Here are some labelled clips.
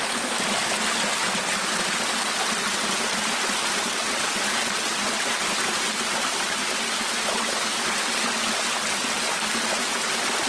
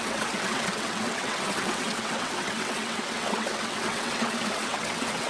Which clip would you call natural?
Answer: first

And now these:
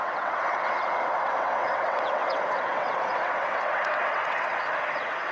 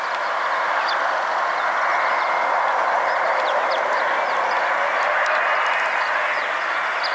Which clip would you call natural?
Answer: second